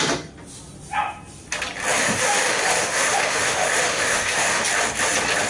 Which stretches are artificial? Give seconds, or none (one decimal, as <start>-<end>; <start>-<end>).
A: 2.0-4.6

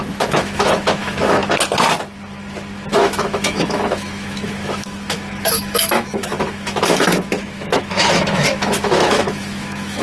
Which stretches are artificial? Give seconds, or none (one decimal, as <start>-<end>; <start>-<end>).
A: 0.0-1.4; 2.9-10.0

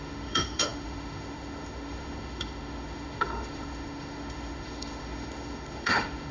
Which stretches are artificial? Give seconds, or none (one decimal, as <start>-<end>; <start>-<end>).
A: 0.0-6.3